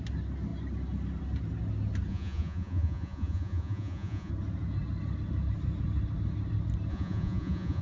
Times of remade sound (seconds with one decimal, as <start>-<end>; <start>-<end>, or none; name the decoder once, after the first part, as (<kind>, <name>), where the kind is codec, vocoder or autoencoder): 2.1-4.3 (vocoder, Vocos); 6.9-7.8